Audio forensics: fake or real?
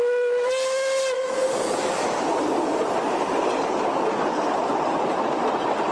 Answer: real